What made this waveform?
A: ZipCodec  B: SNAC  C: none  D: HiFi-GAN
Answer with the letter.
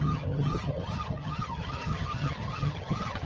D